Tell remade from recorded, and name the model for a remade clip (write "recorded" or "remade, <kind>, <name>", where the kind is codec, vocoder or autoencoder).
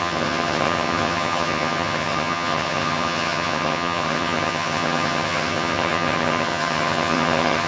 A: remade, vocoder, HiFi-GAN